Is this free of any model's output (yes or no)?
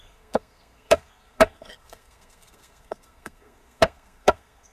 no